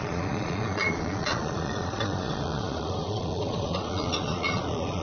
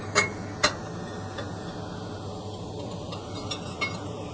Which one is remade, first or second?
first